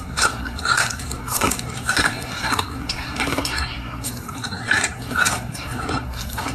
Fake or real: fake